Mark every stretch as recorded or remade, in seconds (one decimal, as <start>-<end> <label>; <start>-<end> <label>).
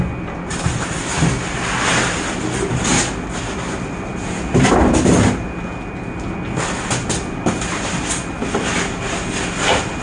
0.0-10.0 recorded